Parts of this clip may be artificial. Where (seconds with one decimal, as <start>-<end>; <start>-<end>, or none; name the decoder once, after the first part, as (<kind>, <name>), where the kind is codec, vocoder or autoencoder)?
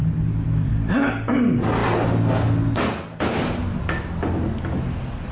0.0-0.7 (vocoder, BigVGAN v2)